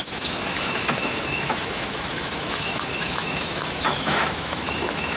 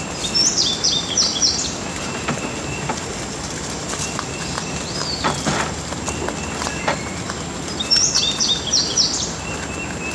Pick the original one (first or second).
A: second